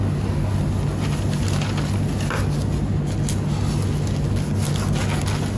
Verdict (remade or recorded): recorded